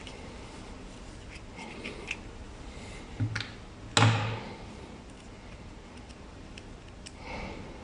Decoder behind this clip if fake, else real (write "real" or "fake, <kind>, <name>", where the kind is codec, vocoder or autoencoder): real